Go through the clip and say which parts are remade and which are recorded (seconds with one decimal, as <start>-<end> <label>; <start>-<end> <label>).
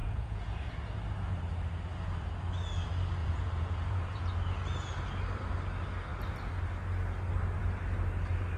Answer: 0.0-0.7 remade; 0.7-3.2 recorded; 3.2-4.2 remade; 4.2-8.6 recorded